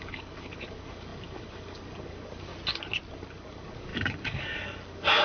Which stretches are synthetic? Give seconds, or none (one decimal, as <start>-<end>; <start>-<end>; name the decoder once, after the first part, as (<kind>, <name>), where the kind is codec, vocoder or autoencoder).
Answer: 0.0-2.5 (codec, DAC); 3.1-5.2